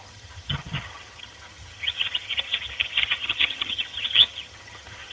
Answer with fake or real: fake